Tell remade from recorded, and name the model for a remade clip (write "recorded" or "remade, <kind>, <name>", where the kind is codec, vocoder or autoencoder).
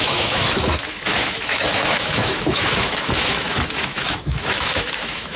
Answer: remade, autoencoder, DAC-VAE